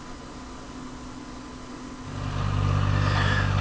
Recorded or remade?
recorded